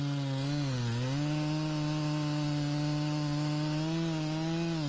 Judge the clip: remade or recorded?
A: recorded